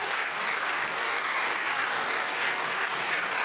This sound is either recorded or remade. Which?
remade